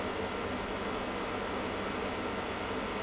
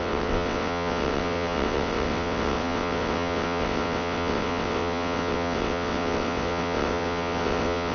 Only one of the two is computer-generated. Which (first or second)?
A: second